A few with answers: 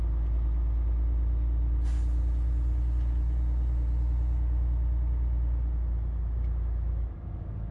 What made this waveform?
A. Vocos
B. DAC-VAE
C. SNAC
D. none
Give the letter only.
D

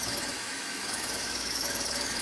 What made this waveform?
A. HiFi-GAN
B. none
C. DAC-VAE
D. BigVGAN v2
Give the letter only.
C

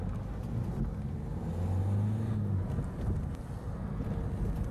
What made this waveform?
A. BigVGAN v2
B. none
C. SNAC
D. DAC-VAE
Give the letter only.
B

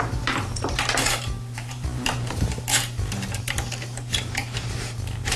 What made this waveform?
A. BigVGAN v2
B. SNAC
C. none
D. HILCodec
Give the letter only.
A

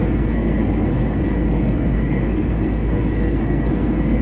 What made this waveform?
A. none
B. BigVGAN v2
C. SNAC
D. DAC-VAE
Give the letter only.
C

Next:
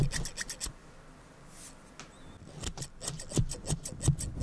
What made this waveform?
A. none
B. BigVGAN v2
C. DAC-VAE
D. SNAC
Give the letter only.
A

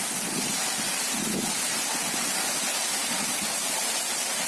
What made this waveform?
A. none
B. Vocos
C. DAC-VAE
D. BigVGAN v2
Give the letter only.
A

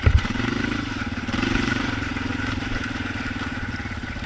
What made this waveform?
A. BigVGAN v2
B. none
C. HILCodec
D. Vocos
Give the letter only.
A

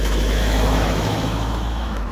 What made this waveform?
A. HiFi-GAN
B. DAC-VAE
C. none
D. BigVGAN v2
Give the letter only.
B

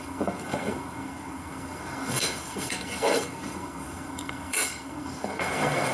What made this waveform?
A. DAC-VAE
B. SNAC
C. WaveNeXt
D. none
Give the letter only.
B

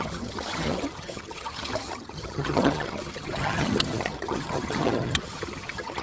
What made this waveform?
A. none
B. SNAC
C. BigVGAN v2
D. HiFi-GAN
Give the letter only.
D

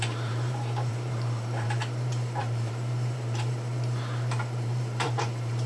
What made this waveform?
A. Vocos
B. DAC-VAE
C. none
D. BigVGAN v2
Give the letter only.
D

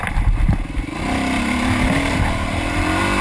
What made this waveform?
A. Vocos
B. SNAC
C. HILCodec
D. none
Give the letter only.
D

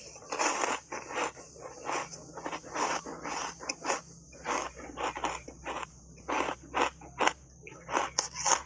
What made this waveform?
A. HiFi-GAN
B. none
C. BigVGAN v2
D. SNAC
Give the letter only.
B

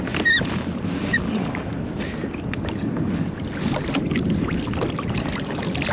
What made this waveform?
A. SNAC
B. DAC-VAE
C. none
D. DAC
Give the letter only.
C